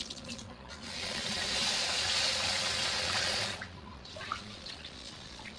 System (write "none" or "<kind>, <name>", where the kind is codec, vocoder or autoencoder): vocoder, Vocos